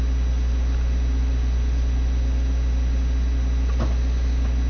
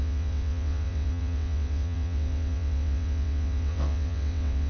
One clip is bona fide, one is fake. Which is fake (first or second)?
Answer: second